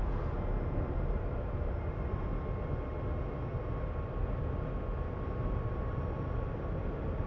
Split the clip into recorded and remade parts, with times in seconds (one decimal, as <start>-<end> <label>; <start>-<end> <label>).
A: 0.0-7.3 recorded